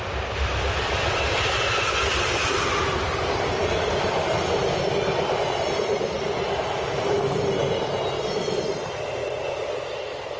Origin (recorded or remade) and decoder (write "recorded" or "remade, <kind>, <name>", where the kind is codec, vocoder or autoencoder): recorded